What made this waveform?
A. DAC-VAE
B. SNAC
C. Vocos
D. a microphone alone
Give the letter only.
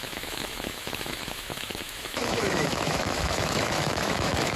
A